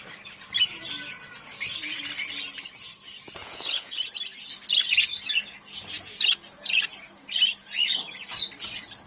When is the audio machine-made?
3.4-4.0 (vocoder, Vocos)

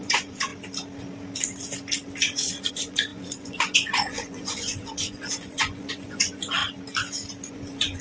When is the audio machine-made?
0.0-0.5 (vocoder, Vocos); 2.7-6.6; 7.5-8.0

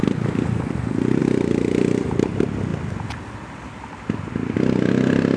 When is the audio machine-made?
none

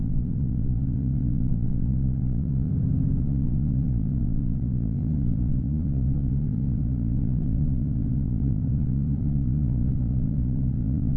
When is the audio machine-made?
0.0-2.7 (vocoder, Vocos); 3.2-11.2

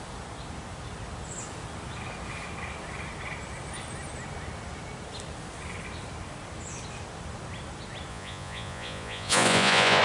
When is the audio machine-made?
8.1-10.0 (vocoder, Vocos)